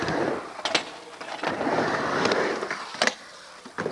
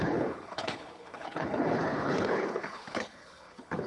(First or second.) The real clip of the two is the first